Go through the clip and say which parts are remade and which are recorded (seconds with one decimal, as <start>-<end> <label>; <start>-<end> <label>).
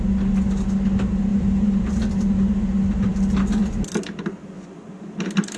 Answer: 0.0-1.3 recorded; 1.3-1.9 remade; 1.9-5.6 recorded